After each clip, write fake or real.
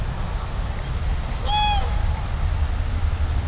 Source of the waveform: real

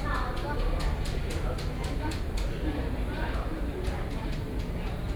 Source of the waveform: real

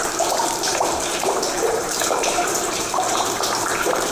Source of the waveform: fake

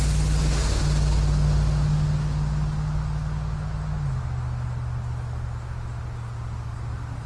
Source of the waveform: real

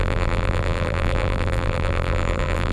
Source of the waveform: fake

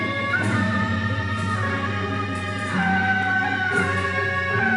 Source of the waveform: fake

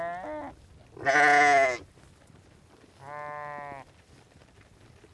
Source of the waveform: real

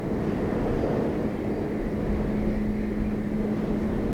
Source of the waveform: real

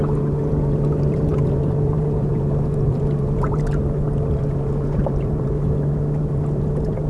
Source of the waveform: fake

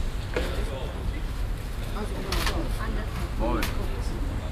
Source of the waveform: real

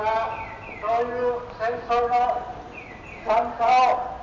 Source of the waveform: real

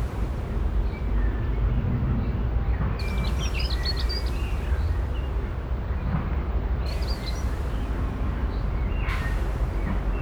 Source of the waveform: real